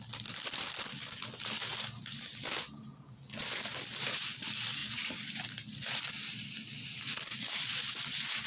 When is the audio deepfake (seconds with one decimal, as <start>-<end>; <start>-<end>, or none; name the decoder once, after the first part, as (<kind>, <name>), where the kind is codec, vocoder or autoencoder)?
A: none